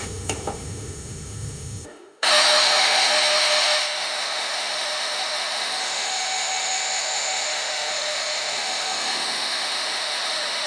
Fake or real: fake